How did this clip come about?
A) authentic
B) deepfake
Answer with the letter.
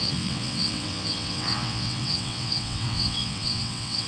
B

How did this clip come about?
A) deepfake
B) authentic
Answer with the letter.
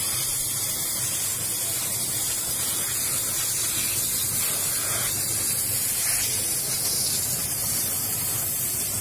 B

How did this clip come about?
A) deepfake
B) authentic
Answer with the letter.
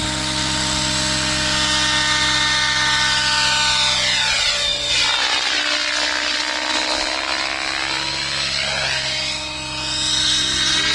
B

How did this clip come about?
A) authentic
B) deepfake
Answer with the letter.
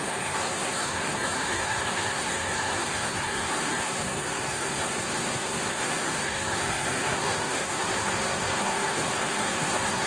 B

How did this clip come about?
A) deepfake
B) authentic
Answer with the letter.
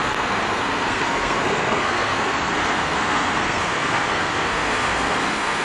A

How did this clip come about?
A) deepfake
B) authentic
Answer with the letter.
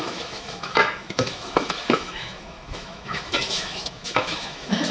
A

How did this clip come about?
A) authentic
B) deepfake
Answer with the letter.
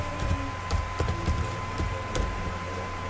A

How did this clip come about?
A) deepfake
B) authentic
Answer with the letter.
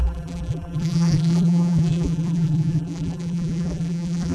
A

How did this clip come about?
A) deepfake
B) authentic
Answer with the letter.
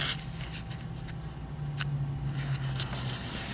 B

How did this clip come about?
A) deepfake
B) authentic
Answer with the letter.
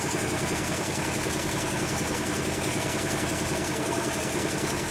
A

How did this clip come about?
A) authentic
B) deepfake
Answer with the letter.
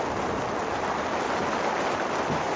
A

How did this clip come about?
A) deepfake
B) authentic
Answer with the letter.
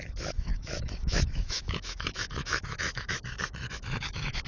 A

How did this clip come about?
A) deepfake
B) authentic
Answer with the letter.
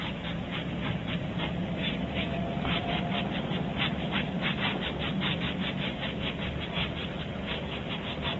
B